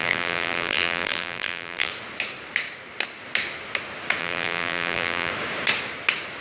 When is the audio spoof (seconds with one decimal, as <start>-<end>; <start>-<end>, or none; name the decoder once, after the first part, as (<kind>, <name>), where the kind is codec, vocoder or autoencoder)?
0.0-1.9 (vocoder, BigVGAN v2); 4.2-5.3

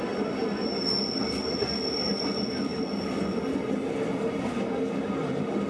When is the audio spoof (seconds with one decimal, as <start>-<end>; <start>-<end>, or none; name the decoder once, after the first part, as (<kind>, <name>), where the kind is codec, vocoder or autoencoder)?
none

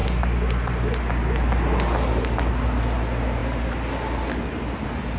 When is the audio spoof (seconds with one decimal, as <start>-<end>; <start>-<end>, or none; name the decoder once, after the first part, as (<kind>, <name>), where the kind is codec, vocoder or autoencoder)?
none

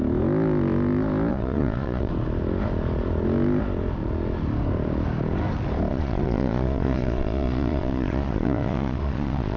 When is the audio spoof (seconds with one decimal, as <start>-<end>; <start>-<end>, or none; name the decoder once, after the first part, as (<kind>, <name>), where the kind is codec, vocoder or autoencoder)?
1.3-2.1 (vocoder, Vocos); 5.9-9.6

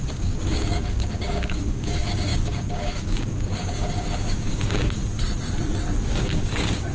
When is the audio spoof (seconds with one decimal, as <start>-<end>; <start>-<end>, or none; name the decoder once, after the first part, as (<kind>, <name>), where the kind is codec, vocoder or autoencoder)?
0.0-5.0 (codec, DAC); 6.1-6.9

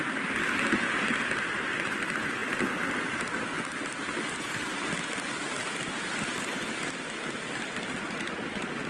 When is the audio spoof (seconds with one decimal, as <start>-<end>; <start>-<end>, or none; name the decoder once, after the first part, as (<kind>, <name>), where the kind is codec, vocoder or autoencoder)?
none